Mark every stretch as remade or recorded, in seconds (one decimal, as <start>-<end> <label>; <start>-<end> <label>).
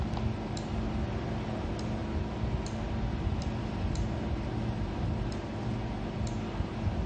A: 0.0-7.1 recorded